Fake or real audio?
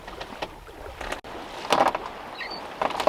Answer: real